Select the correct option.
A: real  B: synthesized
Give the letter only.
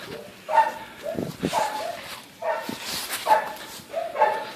A